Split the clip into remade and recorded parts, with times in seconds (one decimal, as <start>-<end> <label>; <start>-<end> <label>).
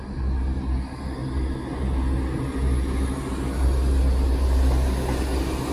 0.0-5.7 recorded